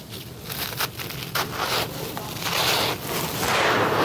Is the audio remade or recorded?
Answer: recorded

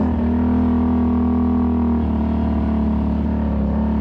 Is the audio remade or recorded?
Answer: recorded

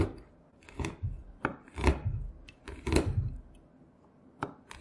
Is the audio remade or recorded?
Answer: recorded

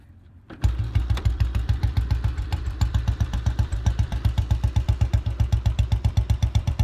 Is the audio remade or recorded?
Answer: remade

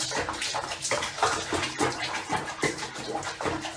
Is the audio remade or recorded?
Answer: remade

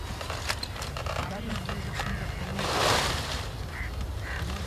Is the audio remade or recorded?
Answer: remade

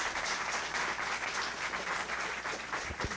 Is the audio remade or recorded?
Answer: recorded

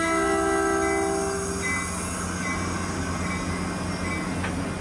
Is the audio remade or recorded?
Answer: recorded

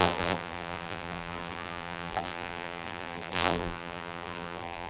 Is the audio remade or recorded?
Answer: remade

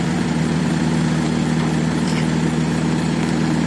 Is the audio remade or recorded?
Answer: recorded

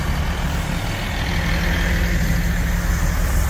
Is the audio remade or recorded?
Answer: recorded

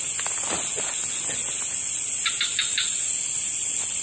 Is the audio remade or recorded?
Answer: recorded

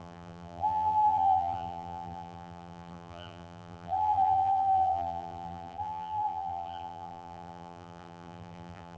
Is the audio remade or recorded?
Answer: remade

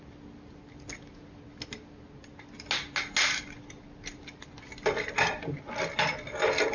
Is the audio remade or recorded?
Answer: recorded